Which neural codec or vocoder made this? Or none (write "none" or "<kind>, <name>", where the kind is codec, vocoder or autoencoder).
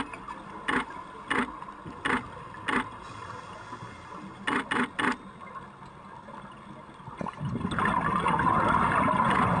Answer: none